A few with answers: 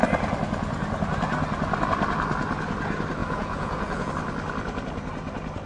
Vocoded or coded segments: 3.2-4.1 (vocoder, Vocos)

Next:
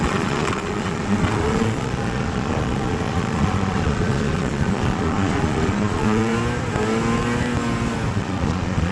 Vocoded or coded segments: 0.0-6.3 (vocoder, Vocos); 8.1-8.9

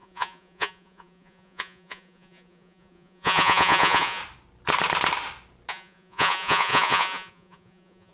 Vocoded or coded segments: 0.0-4.2 (vocoder, Vocos); 5.7-8.1

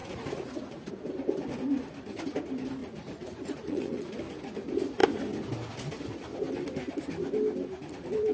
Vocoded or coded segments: 0.0-0.9 (vocoder, Vocos); 2.8-4.1

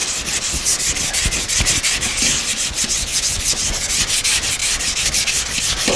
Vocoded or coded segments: 2.5-4.0 (vocoder, Vocos)

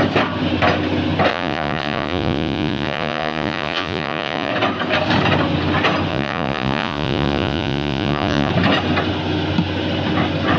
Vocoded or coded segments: 1.3-4.5 (vocoder, Vocos); 6.1-8.5

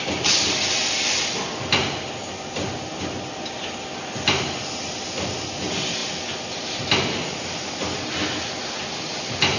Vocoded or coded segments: none